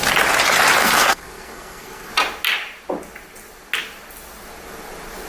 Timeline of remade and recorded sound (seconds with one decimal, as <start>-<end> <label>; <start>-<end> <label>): 0.0-0.8 recorded; 0.8-2.1 remade; 2.1-5.3 recorded